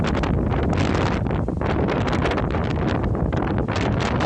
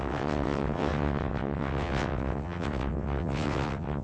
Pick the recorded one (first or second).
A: first